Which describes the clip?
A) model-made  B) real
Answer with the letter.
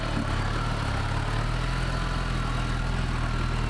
B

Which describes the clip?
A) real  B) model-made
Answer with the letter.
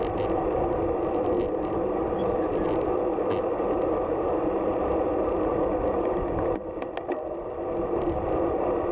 A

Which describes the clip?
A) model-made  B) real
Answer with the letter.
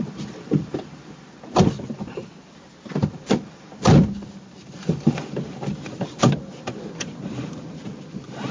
A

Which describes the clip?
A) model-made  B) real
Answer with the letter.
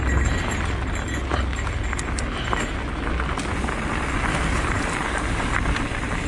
B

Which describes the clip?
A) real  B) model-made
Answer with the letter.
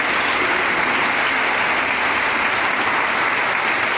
A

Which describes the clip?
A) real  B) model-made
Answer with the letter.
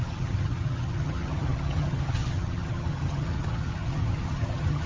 B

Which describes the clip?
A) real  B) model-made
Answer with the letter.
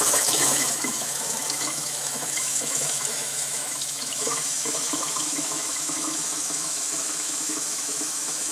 B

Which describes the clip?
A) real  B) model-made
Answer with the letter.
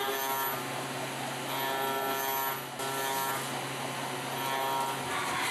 A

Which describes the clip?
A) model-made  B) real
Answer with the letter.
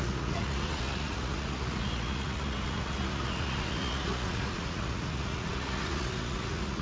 A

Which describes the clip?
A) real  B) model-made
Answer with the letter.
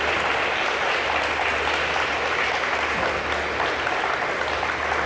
A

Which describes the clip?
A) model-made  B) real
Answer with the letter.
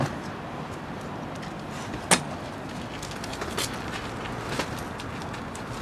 B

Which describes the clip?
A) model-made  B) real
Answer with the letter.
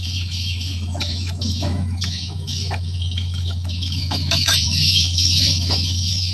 A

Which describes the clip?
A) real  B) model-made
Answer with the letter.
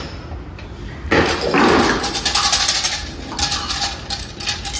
A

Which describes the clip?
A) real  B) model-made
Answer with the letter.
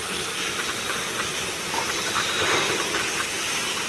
A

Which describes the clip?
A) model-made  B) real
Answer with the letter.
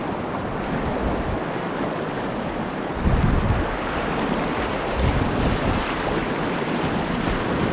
B